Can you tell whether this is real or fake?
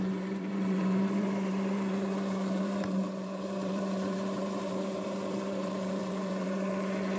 fake